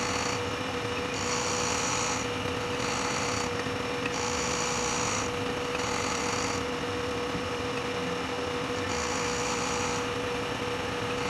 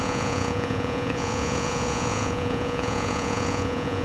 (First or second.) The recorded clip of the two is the first